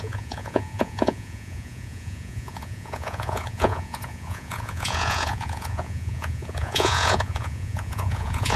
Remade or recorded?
remade